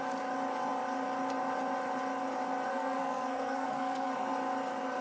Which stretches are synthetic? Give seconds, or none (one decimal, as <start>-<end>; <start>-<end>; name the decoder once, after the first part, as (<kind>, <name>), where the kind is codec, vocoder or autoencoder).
2.7-4.3 (codec, SNAC)